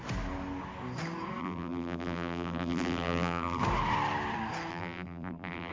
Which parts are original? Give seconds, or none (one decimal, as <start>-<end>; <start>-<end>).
0.0-1.4; 3.6-4.7